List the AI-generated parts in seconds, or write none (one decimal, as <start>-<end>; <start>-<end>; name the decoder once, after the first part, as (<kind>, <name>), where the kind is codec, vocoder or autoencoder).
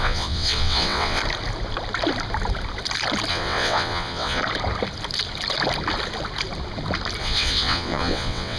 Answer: 0.0-1.2 (vocoder, WaveNeXt); 3.3-4.4; 7.2-8.6